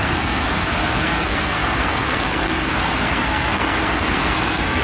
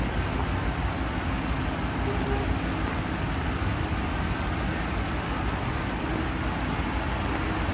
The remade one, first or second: first